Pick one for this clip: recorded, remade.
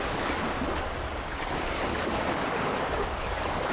remade